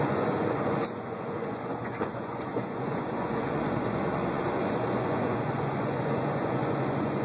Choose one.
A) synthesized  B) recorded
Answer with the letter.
A